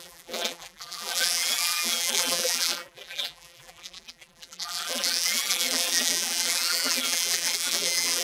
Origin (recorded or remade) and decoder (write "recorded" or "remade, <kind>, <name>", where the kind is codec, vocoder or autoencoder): remade, vocoder, BigVGAN v2